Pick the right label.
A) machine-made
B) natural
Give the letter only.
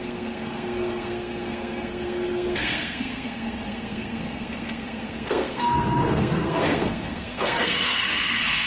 A